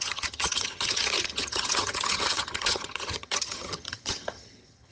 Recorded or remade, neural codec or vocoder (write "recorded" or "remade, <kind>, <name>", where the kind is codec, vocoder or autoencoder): remade, vocoder, HiFi-GAN